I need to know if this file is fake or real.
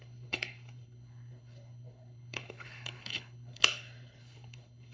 fake